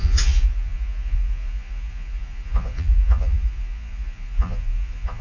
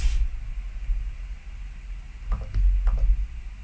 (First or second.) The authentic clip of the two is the second